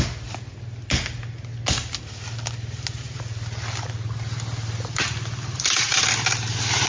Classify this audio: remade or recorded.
recorded